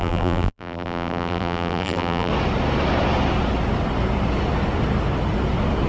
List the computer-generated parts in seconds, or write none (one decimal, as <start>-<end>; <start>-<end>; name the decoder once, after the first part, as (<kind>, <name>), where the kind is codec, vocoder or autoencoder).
0.0-2.3 (vocoder, BigVGAN v2)